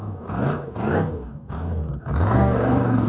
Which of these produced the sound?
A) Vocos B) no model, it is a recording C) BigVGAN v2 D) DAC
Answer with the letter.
D